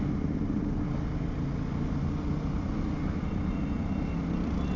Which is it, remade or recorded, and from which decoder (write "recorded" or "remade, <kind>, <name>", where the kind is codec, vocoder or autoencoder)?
recorded